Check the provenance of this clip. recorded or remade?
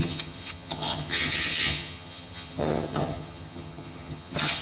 remade